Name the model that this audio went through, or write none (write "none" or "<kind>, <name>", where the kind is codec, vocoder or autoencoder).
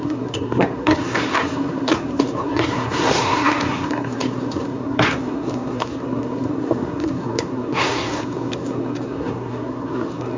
codec, SNAC